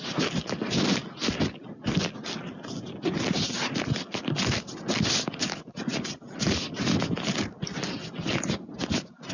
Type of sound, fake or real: real